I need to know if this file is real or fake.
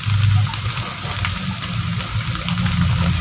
real